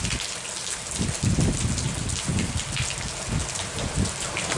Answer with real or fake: real